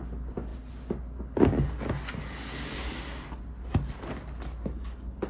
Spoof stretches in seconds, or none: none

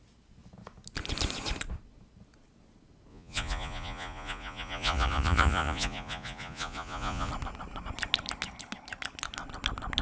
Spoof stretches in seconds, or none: 3.1-7.3

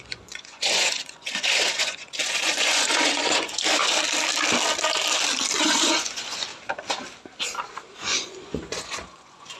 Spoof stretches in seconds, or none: 0.0-3.8; 5.6-6.5; 8.0-9.6

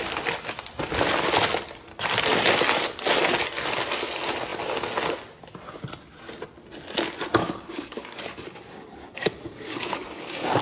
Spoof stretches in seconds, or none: 7.4-10.6